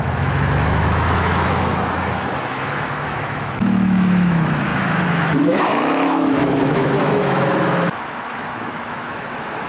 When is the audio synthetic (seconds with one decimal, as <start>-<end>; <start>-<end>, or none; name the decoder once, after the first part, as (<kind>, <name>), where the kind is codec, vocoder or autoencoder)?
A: 0.0-9.7 (autoencoder, DAC-VAE)